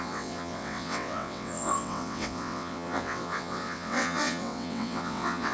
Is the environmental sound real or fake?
fake